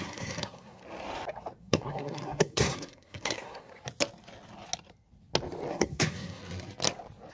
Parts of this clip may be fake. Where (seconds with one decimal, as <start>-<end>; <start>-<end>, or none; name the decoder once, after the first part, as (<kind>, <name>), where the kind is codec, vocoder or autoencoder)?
0.0-0.8 (codec, SNAC); 1.6-3.7; 5.7-6.4